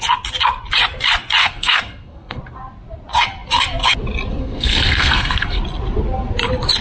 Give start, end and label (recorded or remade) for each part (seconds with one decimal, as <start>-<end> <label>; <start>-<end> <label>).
0.0-1.4 recorded; 1.4-2.4 remade; 2.4-4.3 recorded; 4.3-5.6 remade; 5.6-6.8 recorded